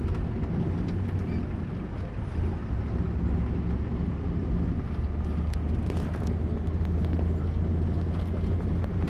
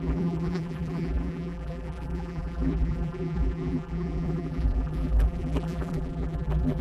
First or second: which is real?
first